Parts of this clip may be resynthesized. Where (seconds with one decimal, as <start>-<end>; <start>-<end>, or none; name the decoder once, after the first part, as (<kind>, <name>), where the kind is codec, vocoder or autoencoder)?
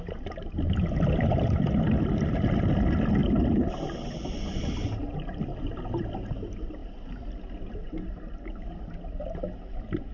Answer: none